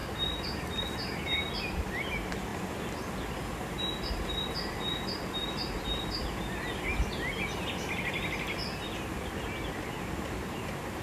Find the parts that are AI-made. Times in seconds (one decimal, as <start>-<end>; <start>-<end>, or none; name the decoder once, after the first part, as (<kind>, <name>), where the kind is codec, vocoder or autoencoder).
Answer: none